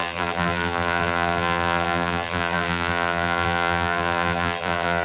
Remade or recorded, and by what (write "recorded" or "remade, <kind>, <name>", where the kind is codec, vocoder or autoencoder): remade, vocoder, BigVGAN v2